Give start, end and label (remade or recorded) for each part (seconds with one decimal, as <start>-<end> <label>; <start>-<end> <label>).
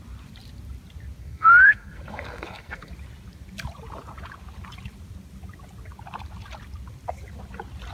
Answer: 0.0-1.2 recorded; 1.2-2.9 remade; 2.9-7.9 recorded